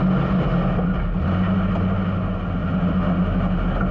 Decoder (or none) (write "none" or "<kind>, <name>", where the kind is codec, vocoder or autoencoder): none